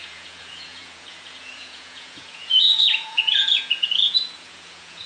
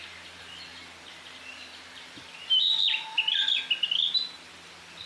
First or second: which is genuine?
second